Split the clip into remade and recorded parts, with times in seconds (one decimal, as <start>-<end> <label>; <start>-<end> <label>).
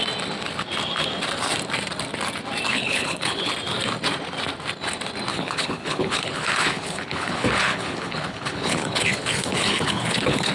0.0-2.7 recorded; 2.7-3.5 remade; 3.5-5.3 recorded; 5.3-10.5 remade